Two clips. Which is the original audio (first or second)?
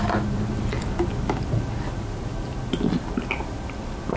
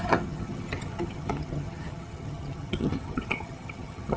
first